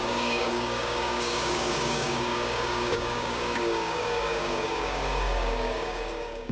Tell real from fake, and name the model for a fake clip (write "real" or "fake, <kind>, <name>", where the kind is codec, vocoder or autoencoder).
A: fake, codec, DAC